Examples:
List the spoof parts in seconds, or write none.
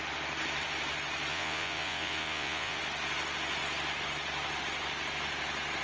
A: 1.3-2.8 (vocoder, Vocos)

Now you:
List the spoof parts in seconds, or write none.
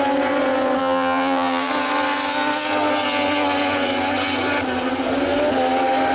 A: 0.8-1.7 (vocoder, BigVGAN v2)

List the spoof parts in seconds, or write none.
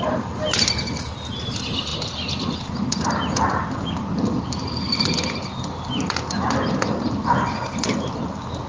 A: none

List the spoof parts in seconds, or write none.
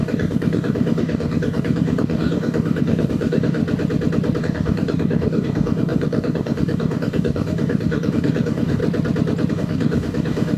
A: 0.0-3.6 (codec, DAC); 4.4-8.8; 9.5-10.6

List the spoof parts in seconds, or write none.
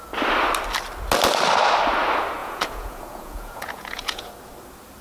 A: 2.4-4.3 (vocoder, Vocos)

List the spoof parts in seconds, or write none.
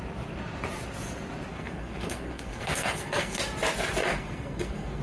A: 1.5-3.4 (codec, SNAC); 4.0-5.0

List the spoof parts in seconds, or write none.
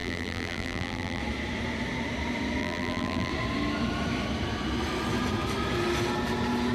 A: 0.0-1.2 (vocoder, BigVGAN v2); 2.6-3.3